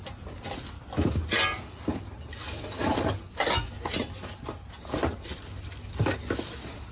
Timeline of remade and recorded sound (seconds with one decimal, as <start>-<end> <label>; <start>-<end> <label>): 0.0-6.9 recorded